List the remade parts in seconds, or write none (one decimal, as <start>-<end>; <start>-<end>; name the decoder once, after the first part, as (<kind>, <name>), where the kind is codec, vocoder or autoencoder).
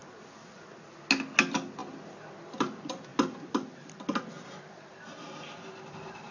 1.4-3.1 (vocoder, BigVGAN v2); 4.7-6.3